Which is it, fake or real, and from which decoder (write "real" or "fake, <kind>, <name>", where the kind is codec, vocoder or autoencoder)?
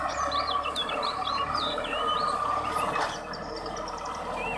real